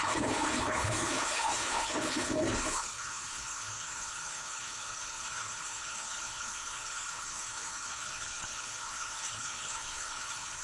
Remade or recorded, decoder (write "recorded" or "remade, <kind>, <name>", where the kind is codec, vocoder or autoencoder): remade, codec, HILCodec